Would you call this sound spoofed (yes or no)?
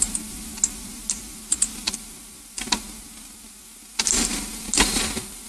no